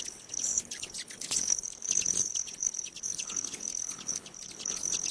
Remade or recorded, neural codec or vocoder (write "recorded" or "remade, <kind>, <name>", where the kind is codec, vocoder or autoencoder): remade, codec, HILCodec